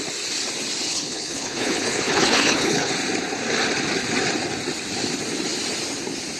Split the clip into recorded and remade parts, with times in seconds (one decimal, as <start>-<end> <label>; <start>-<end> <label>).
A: 0.0-0.9 recorded; 0.9-2.9 remade; 2.9-6.4 recorded